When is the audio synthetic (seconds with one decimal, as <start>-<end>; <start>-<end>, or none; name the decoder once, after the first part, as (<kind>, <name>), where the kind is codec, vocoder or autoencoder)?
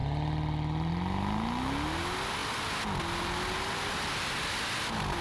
none